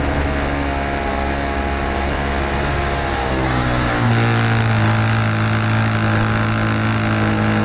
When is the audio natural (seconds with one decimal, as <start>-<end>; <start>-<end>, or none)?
0.0-3.2; 3.9-7.6